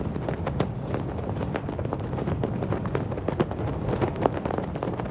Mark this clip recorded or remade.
recorded